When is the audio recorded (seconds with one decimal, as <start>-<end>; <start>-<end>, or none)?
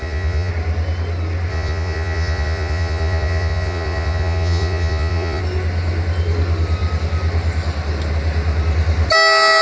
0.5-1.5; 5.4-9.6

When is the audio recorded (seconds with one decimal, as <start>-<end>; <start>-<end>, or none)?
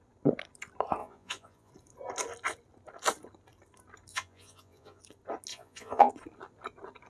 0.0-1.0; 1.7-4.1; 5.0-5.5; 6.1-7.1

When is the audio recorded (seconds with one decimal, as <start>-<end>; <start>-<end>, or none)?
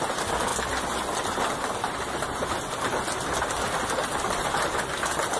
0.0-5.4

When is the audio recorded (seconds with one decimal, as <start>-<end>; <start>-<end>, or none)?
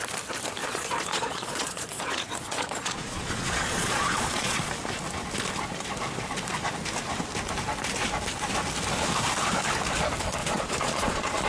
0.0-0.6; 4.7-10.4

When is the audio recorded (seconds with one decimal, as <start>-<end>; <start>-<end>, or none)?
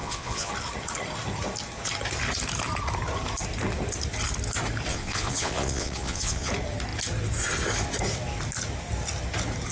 0.5-4.9; 6.5-9.7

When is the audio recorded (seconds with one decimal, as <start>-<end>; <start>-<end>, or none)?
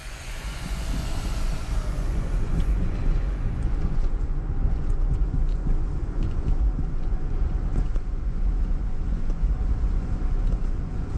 none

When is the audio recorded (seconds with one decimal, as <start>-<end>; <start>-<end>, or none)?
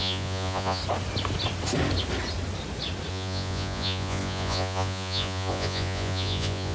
0.8-3.1